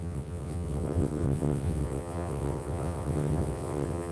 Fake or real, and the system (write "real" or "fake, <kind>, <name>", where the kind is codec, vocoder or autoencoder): fake, vocoder, WaveNeXt